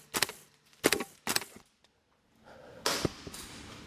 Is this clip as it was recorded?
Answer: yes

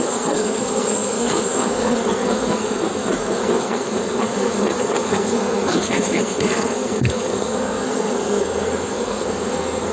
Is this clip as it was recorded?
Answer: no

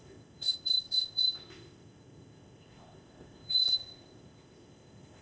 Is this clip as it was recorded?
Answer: no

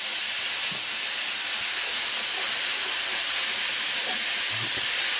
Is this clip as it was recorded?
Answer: yes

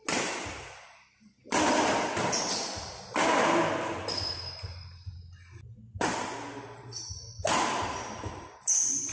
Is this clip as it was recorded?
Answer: yes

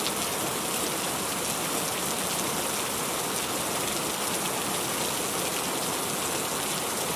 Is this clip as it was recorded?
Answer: yes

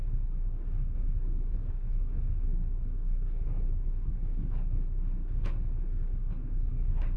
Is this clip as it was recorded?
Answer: no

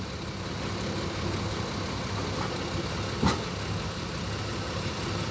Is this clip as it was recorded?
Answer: yes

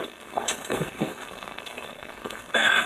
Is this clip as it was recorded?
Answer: no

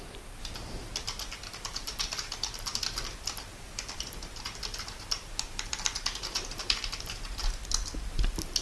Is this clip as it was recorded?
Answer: no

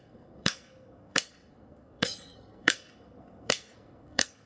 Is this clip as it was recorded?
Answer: no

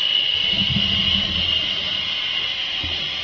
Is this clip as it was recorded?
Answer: yes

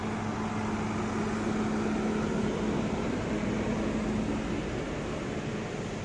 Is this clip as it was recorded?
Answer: yes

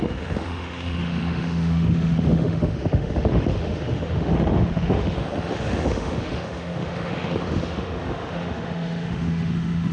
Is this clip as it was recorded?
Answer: no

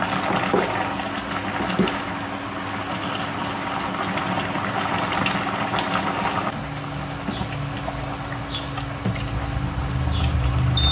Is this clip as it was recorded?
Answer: yes